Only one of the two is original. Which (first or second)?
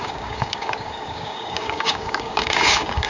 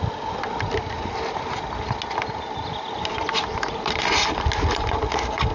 second